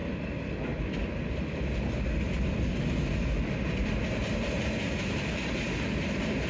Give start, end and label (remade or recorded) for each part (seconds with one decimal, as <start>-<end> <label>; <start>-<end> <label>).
0.0-6.5 recorded